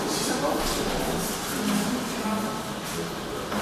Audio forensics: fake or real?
real